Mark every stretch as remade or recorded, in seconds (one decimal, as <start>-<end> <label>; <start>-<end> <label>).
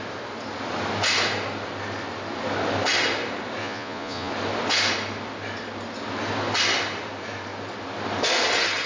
0.0-3.6 recorded; 3.6-4.3 remade; 4.3-8.9 recorded